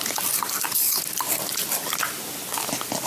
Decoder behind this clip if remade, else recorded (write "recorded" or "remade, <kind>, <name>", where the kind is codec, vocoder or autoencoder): recorded